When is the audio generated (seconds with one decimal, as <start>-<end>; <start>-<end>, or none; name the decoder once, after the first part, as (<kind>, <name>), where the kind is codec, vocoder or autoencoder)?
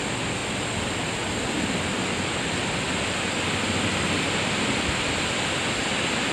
none